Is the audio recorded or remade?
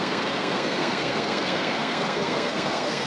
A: remade